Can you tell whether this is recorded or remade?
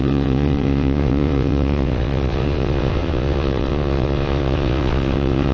remade